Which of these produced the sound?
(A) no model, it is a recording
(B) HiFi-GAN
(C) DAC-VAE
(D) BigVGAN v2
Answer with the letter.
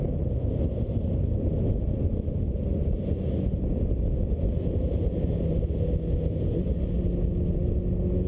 A